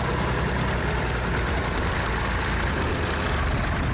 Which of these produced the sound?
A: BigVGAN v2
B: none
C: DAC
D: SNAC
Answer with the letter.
B